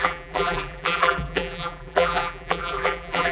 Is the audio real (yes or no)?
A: no